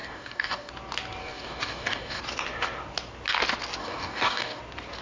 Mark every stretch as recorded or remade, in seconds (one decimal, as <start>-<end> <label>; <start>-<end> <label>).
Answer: 0.0-0.7 remade; 0.7-1.2 recorded; 1.2-2.2 remade; 2.2-3.8 recorded; 3.8-4.6 remade; 4.6-5.0 recorded

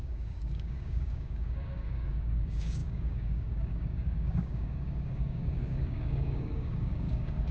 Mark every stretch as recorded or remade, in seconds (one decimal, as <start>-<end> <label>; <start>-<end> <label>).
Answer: 0.0-7.5 remade

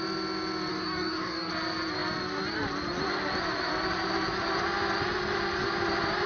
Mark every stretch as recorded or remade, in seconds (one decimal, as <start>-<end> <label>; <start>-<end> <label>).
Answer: 0.0-0.7 recorded; 0.7-1.5 remade; 1.5-6.3 recorded

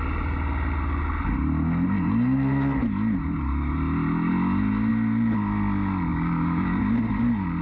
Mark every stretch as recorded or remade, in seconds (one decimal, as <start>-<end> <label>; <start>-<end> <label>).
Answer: 0.0-6.1 recorded; 6.1-6.8 remade; 6.8-7.6 recorded